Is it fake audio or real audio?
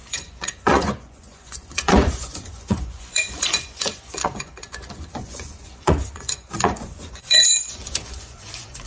fake